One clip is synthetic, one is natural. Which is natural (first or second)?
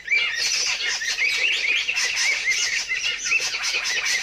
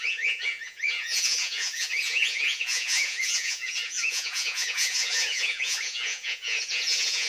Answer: first